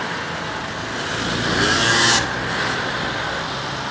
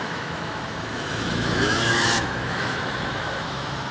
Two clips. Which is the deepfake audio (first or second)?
second